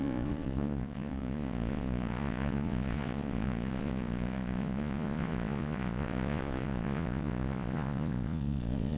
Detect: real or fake fake